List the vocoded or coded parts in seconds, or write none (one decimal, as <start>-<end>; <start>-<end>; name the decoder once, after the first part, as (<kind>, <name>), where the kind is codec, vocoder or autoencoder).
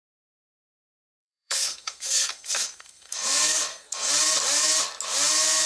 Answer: 0.7-4.1 (codec, SNAC)